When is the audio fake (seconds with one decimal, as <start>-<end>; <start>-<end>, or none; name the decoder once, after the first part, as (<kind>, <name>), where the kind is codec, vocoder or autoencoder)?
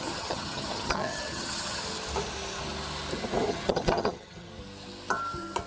0.0-1.8 (vocoder, HiFi-GAN); 3.5-4.5